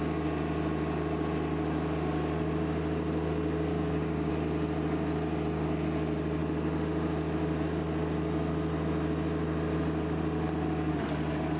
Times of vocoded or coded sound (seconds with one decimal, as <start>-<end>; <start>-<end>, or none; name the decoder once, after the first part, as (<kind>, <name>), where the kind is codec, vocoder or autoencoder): 3.7-4.3 (codec, DAC)

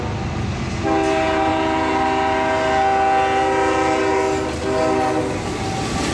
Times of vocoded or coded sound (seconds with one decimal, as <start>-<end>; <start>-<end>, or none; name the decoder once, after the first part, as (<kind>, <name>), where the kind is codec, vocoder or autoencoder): none

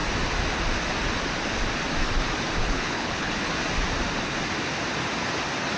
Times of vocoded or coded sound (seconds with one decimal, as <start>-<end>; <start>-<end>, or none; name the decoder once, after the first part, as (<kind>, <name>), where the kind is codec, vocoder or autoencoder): 2.6-3.3 (codec, HILCodec)

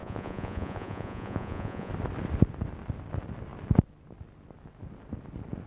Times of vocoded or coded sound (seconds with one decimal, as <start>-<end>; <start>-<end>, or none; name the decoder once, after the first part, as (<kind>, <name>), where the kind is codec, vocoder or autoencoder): 0.0-1.9 (vocoder, Vocos)

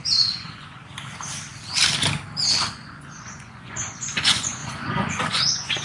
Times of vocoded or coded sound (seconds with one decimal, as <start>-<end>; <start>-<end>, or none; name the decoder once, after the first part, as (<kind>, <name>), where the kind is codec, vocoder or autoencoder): 0.0-0.8 (vocoder, Vocos); 2.7-5.8

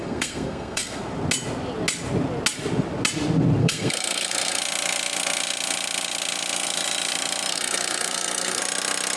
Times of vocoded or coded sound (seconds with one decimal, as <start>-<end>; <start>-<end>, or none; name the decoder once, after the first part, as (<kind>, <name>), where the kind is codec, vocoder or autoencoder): 0.0-1.0 (codec, SNAC); 3.6-4.6; 7.5-8.6

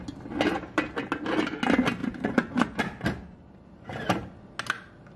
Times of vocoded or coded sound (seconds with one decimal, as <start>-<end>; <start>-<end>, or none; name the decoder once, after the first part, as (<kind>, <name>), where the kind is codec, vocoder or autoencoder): 2.0-2.8 (vocoder, Vocos)

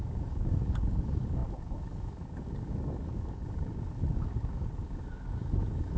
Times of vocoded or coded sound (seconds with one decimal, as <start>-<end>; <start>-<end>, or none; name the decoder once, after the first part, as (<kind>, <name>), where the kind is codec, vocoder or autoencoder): 0.0-6.0 (codec, DAC)